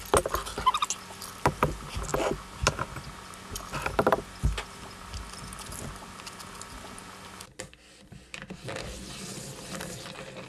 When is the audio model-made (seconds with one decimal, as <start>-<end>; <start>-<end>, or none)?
none